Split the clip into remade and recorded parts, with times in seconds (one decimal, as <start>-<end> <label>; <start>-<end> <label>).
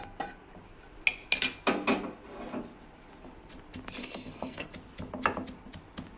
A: 0.0-4.0 recorded; 4.0-4.7 remade; 4.7-6.2 recorded